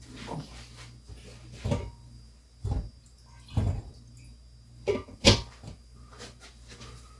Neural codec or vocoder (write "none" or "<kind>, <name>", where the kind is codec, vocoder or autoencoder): none